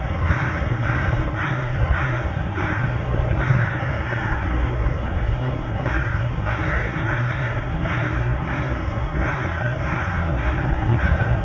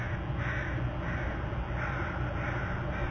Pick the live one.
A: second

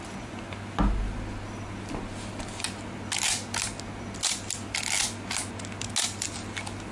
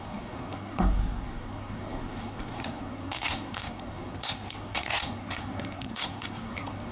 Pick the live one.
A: first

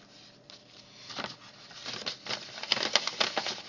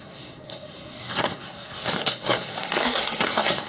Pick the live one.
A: first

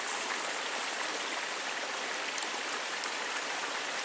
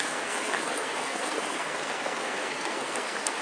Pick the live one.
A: first